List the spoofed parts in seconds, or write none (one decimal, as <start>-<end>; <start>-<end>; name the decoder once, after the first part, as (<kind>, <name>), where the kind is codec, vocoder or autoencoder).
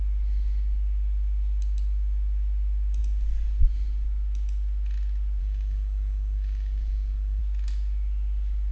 5.4-7.4 (codec, DAC)